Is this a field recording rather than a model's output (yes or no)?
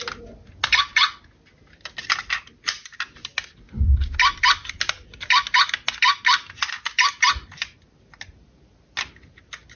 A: yes